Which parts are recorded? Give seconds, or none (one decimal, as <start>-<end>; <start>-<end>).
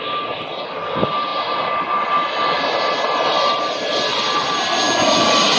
0.0-5.6